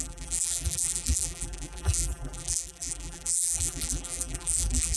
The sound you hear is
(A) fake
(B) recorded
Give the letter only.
A